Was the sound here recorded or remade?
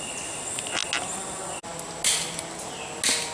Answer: recorded